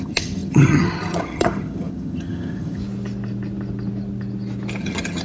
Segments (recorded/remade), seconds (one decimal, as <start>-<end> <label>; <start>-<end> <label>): 0.0-2.8 remade; 2.8-4.8 recorded; 4.8-5.2 remade